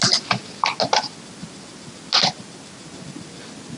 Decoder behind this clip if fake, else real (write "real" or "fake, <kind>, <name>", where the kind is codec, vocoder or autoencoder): real